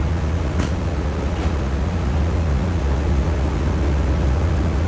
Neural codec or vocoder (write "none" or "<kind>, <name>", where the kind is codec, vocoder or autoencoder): vocoder, Vocos